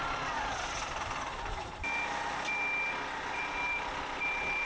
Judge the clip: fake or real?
real